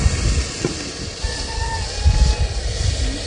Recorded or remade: recorded